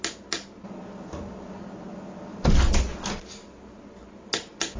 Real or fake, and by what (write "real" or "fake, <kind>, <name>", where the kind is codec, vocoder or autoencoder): real